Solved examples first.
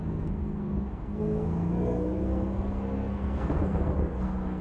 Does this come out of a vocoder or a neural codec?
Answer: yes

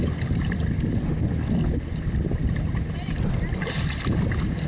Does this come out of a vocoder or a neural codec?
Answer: no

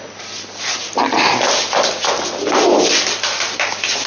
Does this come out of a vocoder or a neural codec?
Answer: no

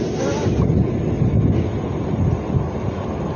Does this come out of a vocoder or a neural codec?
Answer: no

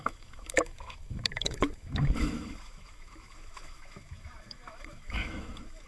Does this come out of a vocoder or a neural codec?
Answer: yes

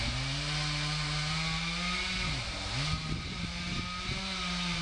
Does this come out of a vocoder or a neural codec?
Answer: no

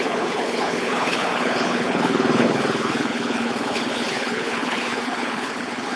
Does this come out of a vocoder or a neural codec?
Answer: yes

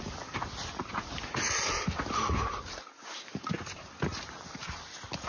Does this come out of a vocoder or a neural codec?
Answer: no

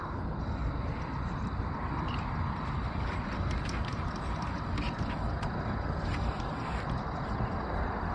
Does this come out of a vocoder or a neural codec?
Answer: no